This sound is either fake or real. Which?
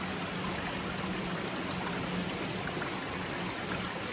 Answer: real